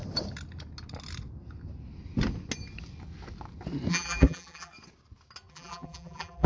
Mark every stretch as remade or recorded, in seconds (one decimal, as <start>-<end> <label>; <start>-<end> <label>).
0.0-3.9 recorded; 3.9-4.7 remade; 4.7-5.5 recorded; 5.5-6.5 remade